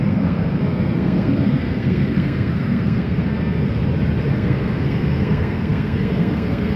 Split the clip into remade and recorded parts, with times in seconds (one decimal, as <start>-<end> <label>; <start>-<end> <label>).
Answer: 0.0-3.8 remade; 3.8-4.3 recorded; 4.3-6.8 remade